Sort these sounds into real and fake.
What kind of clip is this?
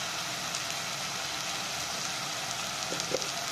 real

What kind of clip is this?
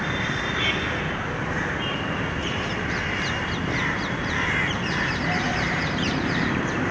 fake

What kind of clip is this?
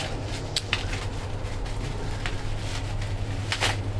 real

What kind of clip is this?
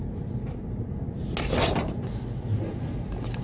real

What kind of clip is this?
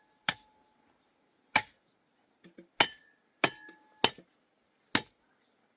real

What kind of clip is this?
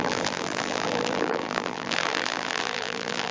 fake